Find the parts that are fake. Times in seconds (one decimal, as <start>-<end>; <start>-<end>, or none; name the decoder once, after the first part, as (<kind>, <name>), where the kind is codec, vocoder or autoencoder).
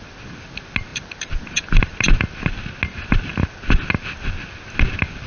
0.9-2.2 (vocoder, BigVGAN v2); 3.3-3.9